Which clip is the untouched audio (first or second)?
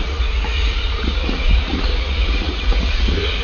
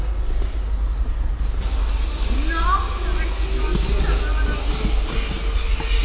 second